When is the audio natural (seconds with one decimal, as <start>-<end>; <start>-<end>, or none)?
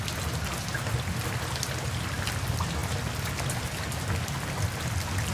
0.0-5.3